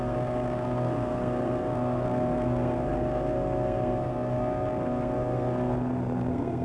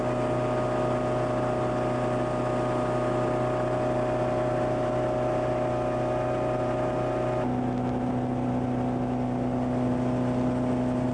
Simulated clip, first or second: first